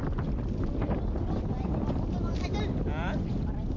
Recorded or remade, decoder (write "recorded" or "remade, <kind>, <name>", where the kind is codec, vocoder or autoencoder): recorded